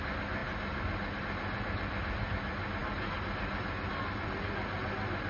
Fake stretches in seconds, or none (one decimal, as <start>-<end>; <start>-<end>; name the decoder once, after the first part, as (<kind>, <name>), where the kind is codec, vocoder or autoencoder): none